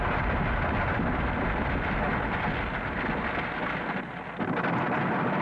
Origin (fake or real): real